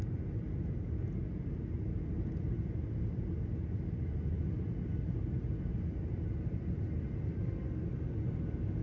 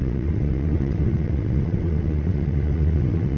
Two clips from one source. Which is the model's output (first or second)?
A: second